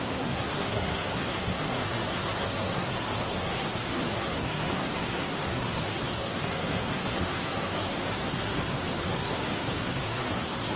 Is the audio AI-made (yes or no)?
yes